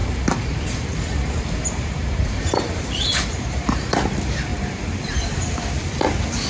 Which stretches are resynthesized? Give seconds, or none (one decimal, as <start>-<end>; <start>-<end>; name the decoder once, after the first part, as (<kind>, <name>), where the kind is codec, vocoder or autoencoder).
0.0-3.9 (vocoder, BigVGAN v2); 4.5-5.6